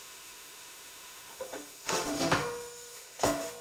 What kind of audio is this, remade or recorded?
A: remade